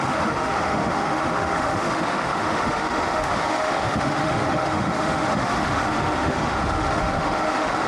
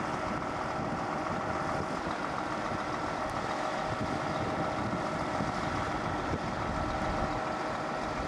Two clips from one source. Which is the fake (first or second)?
first